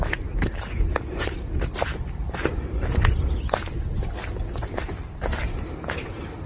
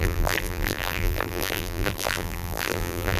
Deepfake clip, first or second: second